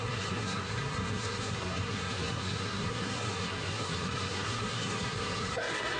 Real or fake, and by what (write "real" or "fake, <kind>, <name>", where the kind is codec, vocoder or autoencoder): fake, codec, SNAC